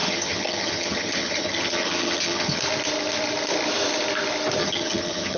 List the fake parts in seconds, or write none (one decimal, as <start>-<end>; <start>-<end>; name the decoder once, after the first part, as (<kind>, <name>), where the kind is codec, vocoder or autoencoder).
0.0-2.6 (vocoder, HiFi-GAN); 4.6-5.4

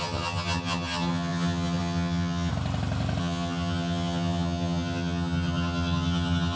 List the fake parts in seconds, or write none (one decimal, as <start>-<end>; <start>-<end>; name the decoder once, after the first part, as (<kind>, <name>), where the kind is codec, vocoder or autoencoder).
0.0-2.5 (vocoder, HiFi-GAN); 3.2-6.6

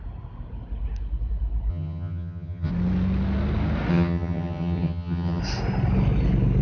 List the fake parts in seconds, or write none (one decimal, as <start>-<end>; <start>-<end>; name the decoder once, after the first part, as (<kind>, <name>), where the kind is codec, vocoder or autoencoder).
1.7-2.7 (vocoder, HiFi-GAN); 3.9-5.4

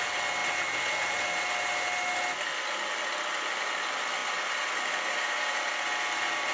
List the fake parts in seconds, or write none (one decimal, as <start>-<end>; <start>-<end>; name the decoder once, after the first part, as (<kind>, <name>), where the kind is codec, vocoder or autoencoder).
none

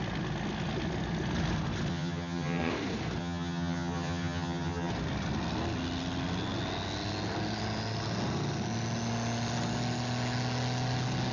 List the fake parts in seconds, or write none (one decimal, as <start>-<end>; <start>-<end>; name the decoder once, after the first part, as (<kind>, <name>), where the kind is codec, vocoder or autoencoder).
1.9-2.7 (vocoder, HiFi-GAN); 3.2-4.9

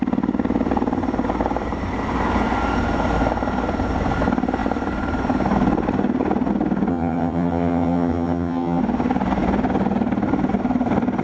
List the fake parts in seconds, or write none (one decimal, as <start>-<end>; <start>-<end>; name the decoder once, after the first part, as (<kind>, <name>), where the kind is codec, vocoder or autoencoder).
6.9-8.8 (vocoder, HiFi-GAN)

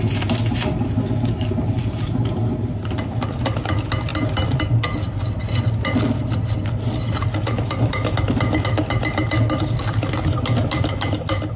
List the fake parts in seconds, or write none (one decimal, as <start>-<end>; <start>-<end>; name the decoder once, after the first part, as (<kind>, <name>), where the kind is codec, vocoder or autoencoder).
none

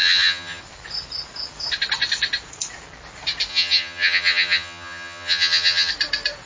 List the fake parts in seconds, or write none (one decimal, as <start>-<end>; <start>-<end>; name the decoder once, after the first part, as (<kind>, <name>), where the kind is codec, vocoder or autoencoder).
0.0-0.6 (vocoder, HiFi-GAN); 3.5-5.9